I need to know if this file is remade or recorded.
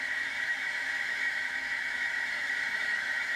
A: remade